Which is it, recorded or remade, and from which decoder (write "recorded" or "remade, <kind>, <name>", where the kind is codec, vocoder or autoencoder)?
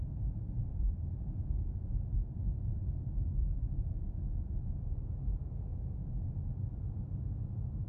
recorded